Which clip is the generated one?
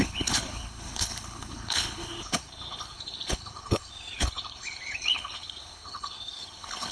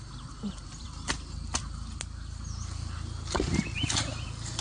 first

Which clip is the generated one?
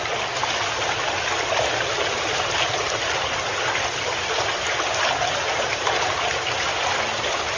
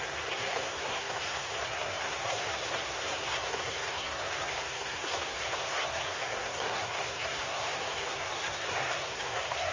second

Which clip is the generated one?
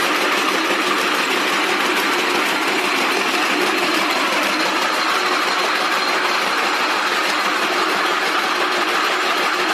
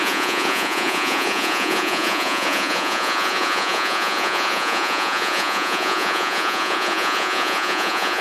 second